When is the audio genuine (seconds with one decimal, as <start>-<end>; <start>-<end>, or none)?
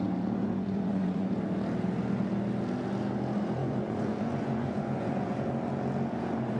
0.0-0.4; 1.3-3.6; 5.5-6.6